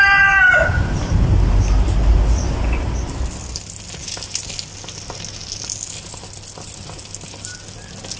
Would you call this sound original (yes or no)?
yes